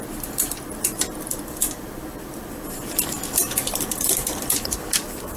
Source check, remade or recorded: remade